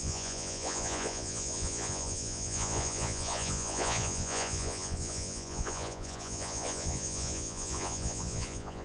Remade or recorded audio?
remade